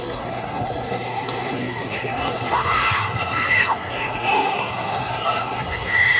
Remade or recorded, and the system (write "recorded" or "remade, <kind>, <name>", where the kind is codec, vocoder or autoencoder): remade, codec, SNAC